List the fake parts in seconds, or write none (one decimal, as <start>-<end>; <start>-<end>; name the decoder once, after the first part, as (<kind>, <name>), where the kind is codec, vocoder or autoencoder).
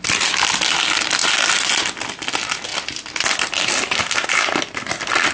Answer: none